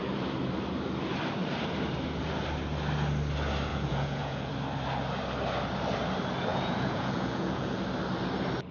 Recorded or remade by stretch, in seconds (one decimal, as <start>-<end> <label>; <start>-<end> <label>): 0.0-3.7 recorded; 3.7-4.5 remade; 4.5-6.5 recorded; 6.5-7.8 remade; 7.8-8.7 recorded

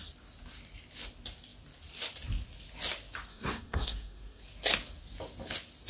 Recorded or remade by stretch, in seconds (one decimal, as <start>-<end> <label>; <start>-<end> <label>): 0.0-3.3 recorded; 3.3-4.4 remade; 4.4-5.9 recorded

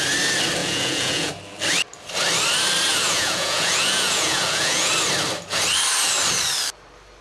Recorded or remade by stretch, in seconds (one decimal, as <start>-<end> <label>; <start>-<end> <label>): 0.0-0.6 recorded; 0.6-1.3 remade; 1.3-2.9 recorded; 2.9-4.9 remade; 4.9-7.2 recorded

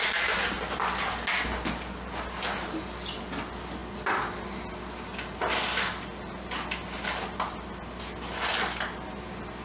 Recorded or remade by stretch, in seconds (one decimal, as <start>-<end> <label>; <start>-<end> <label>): 0.0-9.6 recorded

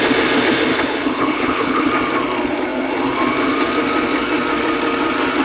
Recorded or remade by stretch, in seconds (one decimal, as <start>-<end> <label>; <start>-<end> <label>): 0.0-0.7 recorded; 0.7-1.9 remade; 1.9-5.4 recorded

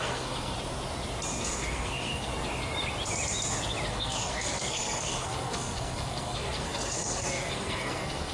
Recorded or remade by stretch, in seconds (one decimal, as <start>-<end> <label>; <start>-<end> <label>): 0.0-0.5 remade; 0.5-1.4 recorded; 1.4-2.3 remade; 2.3-3.9 recorded; 3.9-8.3 remade

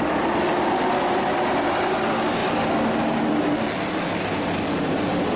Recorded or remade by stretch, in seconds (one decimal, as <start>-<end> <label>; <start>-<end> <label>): 0.0-5.4 recorded